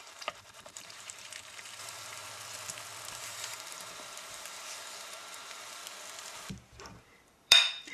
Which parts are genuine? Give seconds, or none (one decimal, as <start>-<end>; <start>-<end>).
2.2-3.2; 5.8-7.0